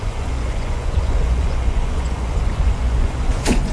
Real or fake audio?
fake